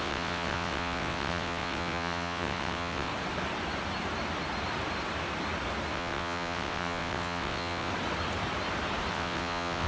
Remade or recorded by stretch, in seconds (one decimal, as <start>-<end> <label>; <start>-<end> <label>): 0.0-3.1 remade; 3.1-5.9 recorded; 5.9-7.9 remade; 7.9-9.1 recorded; 9.1-9.9 remade